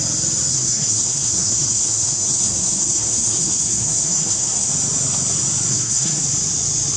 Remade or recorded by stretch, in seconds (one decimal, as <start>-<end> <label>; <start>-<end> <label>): 0.0-0.5 recorded; 0.5-4.7 remade; 4.7-5.7 recorded; 5.7-6.2 remade; 6.2-7.0 recorded